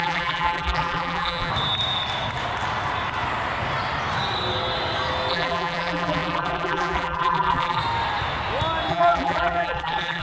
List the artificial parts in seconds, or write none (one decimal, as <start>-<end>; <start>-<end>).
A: 0.0-1.5; 5.3-7.8; 8.9-10.2